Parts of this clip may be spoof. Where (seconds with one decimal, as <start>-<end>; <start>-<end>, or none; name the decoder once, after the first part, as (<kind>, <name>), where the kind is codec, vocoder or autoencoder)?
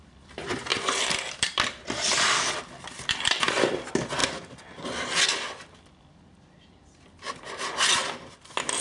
0.7-3.8 (vocoder, BigVGAN v2); 8.0-8.8